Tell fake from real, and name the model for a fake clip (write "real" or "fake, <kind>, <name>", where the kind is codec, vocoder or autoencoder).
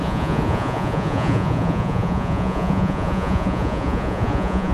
fake, vocoder, Vocos